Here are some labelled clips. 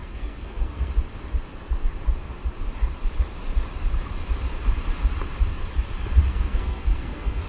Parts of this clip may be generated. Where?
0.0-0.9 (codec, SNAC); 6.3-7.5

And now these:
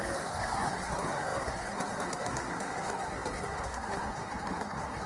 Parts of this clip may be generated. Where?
0.0-5.1 (codec, SNAC)

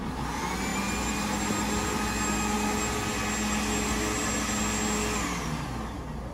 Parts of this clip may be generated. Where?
none

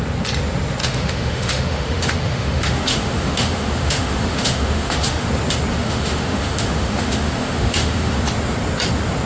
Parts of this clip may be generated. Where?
0.8-5.3 (autoencoder, DAC-VAE); 5.7-8.2